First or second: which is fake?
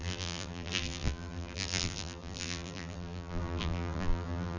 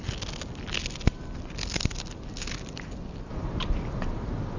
first